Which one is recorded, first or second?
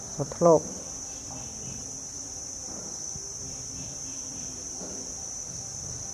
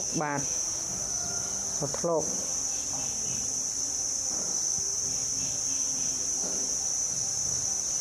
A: second